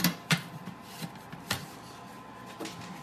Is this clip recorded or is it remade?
recorded